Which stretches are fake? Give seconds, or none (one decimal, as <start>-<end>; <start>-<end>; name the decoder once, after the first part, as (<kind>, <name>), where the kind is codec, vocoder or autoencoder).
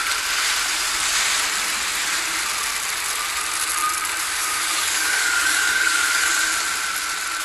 4.2-6.3 (codec, DAC)